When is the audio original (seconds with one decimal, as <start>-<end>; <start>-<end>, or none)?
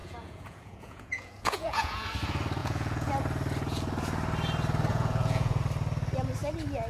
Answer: 2.1-2.6; 3.1-4.9; 5.6-6.9